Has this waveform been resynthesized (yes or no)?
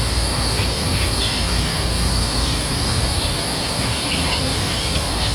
yes